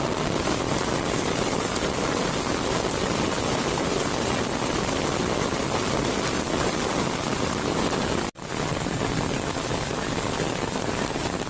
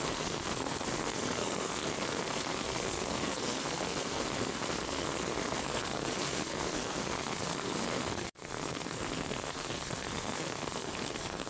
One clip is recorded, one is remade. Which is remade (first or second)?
second